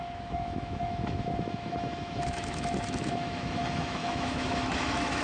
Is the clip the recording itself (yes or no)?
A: no